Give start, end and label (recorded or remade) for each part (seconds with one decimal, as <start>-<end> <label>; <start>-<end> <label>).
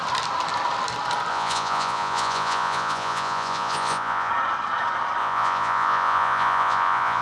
0.0-1.3 recorded; 1.3-4.3 remade; 4.3-5.2 recorded; 5.2-7.2 remade